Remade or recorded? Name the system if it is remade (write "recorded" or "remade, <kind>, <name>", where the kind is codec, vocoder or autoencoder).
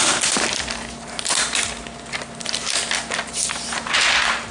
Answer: recorded